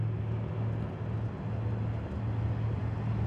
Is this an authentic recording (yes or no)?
yes